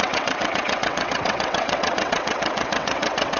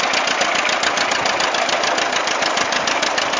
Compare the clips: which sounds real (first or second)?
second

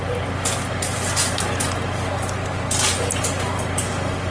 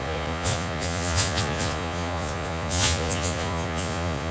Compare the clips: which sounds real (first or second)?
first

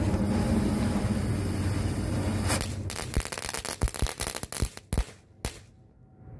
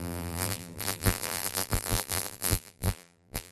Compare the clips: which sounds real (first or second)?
first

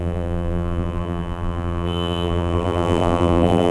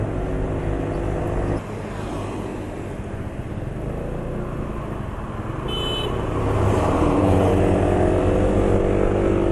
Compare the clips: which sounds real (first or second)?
second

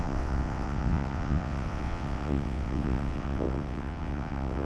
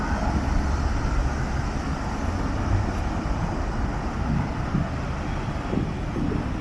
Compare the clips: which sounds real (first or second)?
second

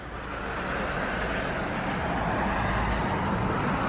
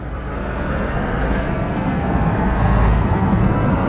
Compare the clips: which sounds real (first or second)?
first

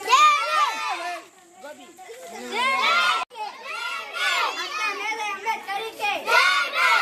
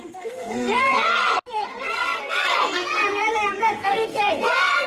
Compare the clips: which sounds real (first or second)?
first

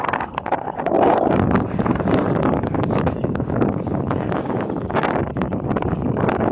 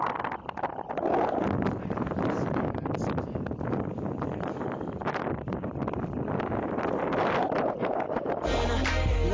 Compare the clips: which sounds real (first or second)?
second